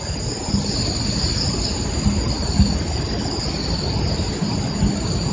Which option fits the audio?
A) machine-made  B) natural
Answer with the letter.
B